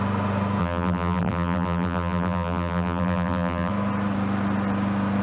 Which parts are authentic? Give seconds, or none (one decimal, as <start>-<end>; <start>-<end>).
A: 0.0-0.6; 3.7-5.2